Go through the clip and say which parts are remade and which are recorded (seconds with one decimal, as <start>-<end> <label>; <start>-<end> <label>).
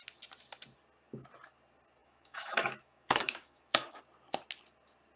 0.0-2.0 recorded; 2.0-4.0 remade; 4.0-5.2 recorded